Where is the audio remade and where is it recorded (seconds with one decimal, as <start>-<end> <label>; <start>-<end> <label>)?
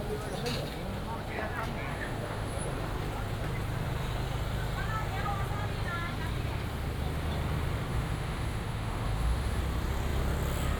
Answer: 0.0-1.9 recorded; 1.9-2.6 remade; 2.6-7.9 recorded; 7.9-9.6 remade; 9.6-10.8 recorded